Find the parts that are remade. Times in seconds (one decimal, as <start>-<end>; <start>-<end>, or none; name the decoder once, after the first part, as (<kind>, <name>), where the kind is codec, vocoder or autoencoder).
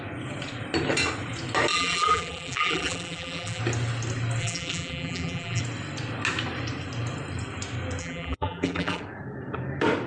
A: 1.7-3.6 (vocoder, BigVGAN v2); 4.4-5.6; 8.0-9.0